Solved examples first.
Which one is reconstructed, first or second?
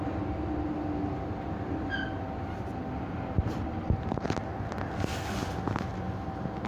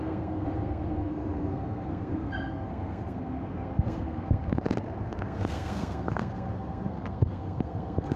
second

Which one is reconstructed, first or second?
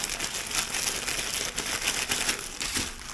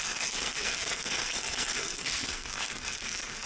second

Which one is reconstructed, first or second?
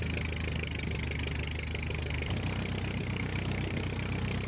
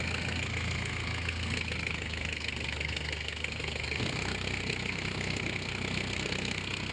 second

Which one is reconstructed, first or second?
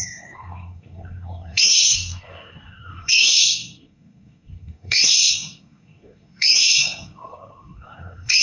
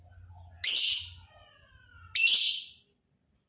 first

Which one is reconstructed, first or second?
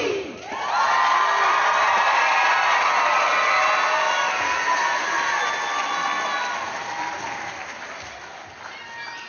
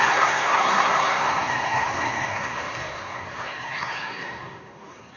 second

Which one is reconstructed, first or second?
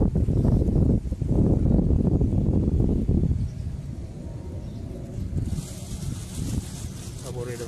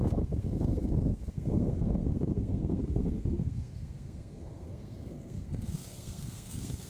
second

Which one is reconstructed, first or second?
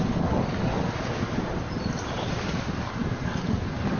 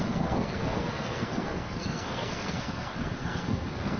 second